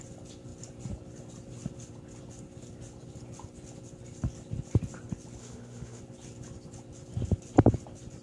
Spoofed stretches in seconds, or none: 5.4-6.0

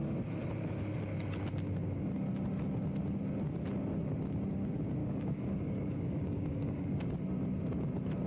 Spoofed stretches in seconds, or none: 5.0-7.0

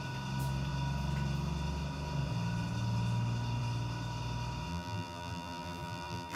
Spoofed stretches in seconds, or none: 4.7-6.4